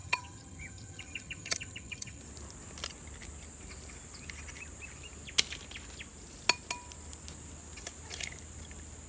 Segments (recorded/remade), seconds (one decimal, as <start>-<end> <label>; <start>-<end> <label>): 0.0-2.2 remade; 2.2-9.1 recorded